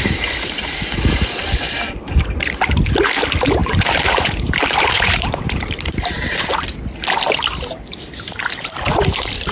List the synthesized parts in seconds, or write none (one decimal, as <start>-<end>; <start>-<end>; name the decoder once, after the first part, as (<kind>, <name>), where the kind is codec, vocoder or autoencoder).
3.6-6.8 (vocoder, BigVGAN v2)